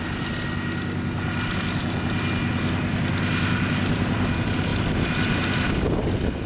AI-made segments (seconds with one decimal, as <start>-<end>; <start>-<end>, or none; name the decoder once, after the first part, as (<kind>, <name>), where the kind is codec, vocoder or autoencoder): none

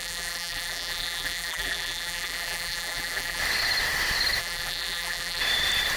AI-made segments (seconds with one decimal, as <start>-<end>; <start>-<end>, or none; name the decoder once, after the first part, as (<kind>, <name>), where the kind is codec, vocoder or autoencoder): 0.0-3.4 (vocoder, BigVGAN v2); 4.4-5.4

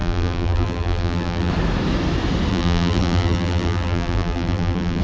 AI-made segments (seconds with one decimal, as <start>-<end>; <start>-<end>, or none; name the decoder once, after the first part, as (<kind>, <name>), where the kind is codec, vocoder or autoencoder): 0.0-1.5 (vocoder, BigVGAN v2); 2.5-5.0

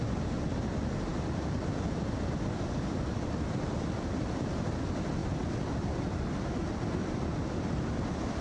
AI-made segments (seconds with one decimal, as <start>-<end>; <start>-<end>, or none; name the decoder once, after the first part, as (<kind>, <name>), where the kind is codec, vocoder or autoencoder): 1.1-4.2 (vocoder, BigVGAN v2); 5.2-6.0; 6.6-8.4

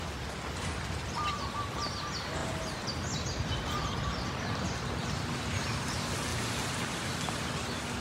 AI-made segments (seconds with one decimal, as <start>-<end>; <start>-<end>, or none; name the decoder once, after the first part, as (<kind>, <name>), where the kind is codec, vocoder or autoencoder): none

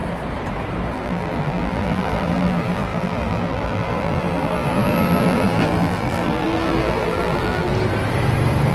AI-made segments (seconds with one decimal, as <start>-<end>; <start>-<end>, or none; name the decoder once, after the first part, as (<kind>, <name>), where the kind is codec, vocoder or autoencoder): 0.9-7.7 (vocoder, BigVGAN v2)

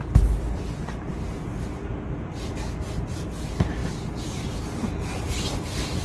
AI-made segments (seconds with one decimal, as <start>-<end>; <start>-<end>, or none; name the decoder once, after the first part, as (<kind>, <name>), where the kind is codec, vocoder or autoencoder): 3.8-4.6 (vocoder, BigVGAN v2)